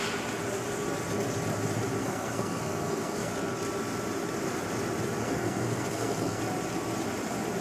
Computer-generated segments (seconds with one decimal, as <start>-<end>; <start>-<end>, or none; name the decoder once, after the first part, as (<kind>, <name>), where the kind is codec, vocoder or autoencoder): 2.0-3.3 (codec, SNAC); 5.2-6.4